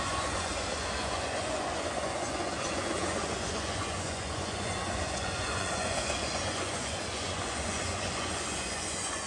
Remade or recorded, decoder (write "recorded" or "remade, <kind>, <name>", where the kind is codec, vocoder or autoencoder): remade, vocoder, Vocos